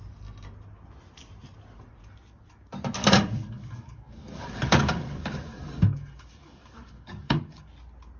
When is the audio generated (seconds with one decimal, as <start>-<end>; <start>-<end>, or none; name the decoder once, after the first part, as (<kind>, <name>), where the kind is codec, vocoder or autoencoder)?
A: 3.0-7.7 (codec, DAC)